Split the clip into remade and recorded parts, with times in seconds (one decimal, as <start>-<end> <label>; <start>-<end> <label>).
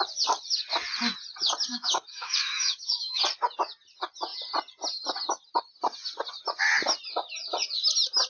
0.0-1.7 recorded; 1.7-3.2 remade; 3.2-8.3 recorded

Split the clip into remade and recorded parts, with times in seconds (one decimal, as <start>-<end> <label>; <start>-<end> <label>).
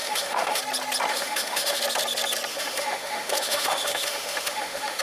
0.0-0.6 remade; 0.6-1.1 recorded; 1.1-1.8 remade; 1.8-2.5 recorded; 2.5-5.0 remade